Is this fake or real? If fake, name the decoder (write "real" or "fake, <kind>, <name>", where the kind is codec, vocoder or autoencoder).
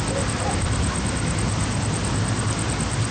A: real